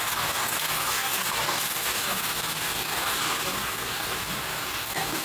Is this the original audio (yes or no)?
no